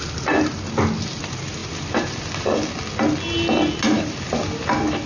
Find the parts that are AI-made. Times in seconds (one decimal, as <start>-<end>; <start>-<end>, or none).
none